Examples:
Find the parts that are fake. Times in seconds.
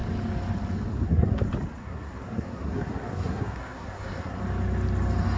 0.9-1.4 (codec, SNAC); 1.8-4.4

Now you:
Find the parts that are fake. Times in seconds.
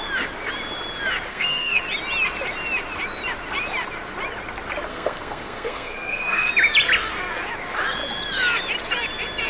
1.3-1.8 (codec, SNAC); 4.9-6.5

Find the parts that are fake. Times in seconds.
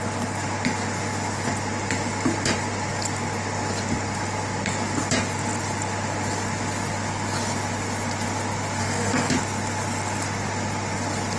8.8-9.3 (codec, SNAC)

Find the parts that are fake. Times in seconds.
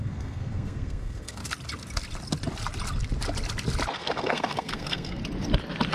0.0-1.4 (codec, SNAC); 3.9-5.2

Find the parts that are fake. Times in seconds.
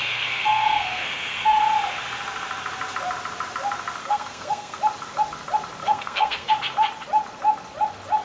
0.0-1.6 (codec, SNAC); 4.0-4.8; 5.8-6.5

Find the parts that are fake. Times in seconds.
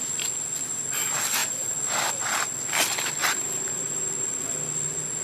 none